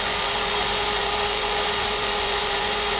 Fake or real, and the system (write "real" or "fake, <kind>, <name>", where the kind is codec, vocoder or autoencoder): fake, vocoder, Vocos